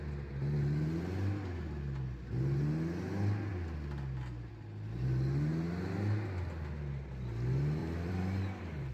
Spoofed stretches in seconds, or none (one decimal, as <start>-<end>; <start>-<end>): 7.8-8.9

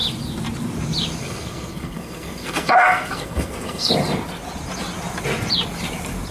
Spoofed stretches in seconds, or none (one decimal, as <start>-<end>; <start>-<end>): 1.2-3.9

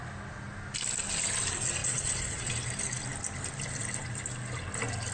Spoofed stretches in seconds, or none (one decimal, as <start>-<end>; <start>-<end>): 1.8-2.5

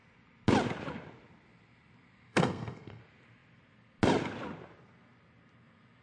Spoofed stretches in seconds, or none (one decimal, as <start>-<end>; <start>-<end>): 2.3-3.0

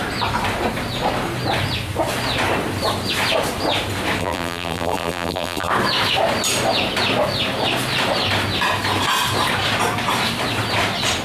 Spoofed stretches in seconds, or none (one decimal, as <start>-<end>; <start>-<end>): 4.2-5.7

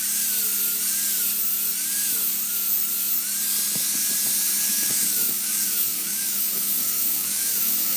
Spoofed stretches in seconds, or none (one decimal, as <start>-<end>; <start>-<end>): 4.7-8.0

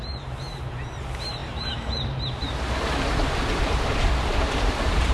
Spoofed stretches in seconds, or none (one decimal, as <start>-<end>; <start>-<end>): 0.0-5.1